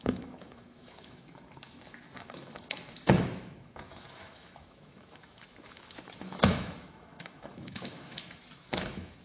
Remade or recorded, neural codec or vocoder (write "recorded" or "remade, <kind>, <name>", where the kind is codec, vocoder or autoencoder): remade, autoencoder, DAC-VAE